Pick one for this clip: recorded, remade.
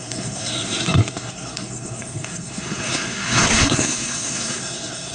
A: remade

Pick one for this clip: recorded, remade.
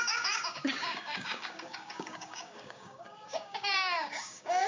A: remade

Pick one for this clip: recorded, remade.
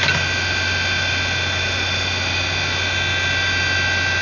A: recorded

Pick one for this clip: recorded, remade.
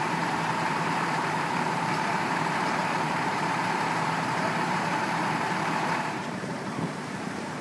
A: remade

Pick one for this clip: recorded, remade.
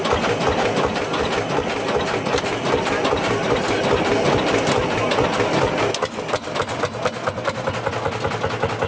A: recorded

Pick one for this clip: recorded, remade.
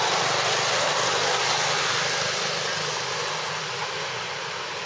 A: recorded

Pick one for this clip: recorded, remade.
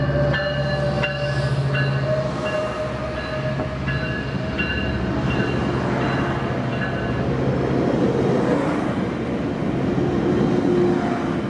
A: recorded